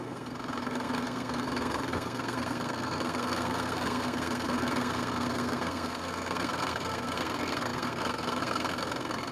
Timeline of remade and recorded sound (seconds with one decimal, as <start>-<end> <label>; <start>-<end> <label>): 0.0-9.3 remade